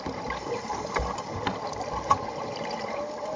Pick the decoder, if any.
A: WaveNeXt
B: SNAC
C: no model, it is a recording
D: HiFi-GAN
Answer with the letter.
C